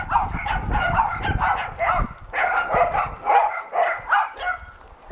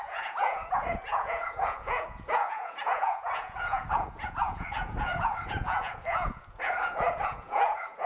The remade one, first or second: second